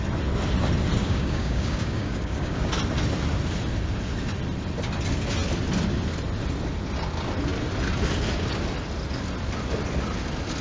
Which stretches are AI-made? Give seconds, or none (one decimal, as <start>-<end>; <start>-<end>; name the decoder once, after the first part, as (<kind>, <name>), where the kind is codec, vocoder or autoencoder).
1.0-2.7 (codec, DAC)